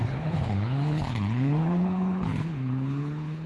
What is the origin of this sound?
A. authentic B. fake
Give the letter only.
B